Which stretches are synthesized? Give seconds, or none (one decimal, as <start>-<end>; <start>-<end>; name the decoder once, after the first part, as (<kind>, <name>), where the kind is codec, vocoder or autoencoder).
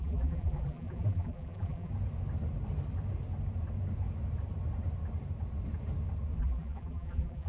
0.0-1.9 (vocoder, BigVGAN v2); 6.4-7.5